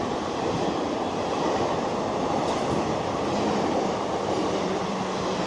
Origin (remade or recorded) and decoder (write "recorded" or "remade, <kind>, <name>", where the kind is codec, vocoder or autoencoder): remade, vocoder, BigVGAN v2